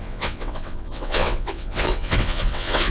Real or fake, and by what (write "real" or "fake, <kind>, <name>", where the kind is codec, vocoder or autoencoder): fake, vocoder, WaveNeXt